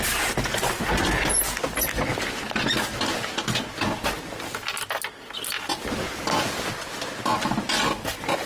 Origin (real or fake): real